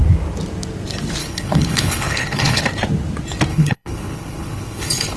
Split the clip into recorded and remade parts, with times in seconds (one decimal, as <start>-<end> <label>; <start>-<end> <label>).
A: 0.0-1.2 recorded; 1.2-2.6 remade; 2.6-3.5 recorded; 3.5-5.2 remade